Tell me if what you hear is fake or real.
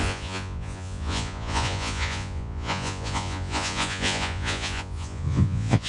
fake